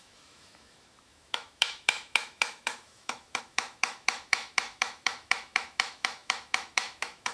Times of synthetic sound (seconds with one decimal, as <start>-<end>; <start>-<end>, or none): 0.0-7.3